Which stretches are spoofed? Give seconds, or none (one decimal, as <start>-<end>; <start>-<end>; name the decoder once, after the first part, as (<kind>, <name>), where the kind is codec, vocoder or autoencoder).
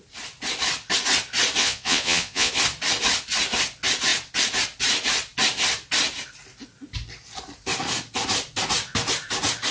1.6-2.5 (vocoder, Vocos)